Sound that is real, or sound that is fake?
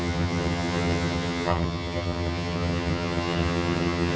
fake